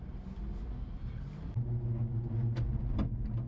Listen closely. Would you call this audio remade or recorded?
recorded